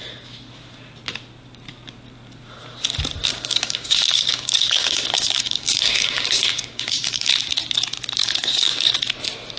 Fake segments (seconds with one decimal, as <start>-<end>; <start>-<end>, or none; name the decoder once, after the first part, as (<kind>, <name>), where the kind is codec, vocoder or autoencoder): 3.3-7.3 (codec, DAC); 8.2-8.9